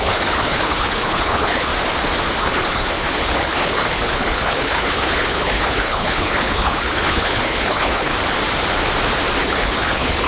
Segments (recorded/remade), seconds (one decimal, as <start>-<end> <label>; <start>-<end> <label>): 0.0-1.7 remade; 1.7-2.4 recorded; 2.4-8.1 remade; 8.1-9.4 recorded; 9.4-10.3 remade